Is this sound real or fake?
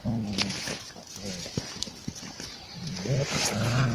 real